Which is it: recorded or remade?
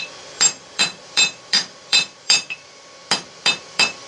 remade